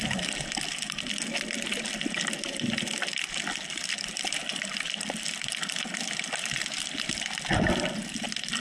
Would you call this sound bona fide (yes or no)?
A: yes